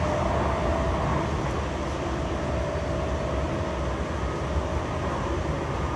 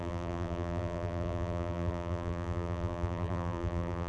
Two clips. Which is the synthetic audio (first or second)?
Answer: second